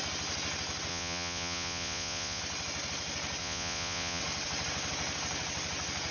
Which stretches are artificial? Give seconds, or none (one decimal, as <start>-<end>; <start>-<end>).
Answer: 0.9-2.4; 3.4-4.2